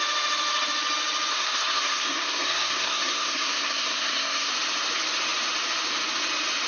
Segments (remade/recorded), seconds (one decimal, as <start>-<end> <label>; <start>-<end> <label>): 0.0-1.3 recorded; 1.3-4.5 remade; 4.5-6.7 recorded